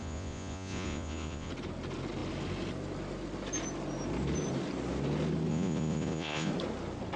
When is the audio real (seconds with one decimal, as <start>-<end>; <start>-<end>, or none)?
1.5-5.5; 6.5-7.2